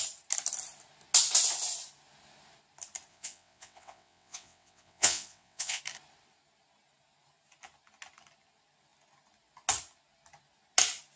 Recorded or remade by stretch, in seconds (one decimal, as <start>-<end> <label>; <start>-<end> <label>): 0.0-3.1 recorded; 3.1-5.8 remade; 5.8-11.2 recorded